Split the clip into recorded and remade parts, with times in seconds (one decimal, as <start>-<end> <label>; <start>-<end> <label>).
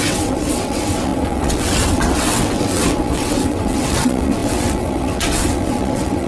0.0-6.3 remade